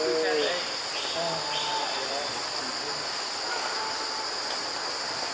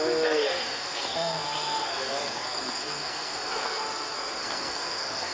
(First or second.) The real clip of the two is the first